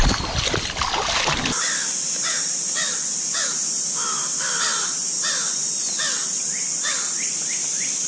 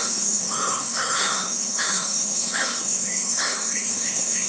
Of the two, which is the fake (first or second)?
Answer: second